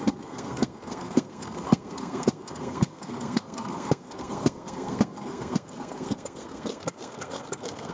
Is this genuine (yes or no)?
no